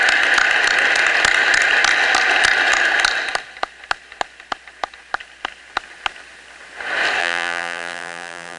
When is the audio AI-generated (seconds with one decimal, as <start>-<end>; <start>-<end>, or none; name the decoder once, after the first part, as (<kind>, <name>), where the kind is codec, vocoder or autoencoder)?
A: 7.2-8.6 (vocoder, BigVGAN v2)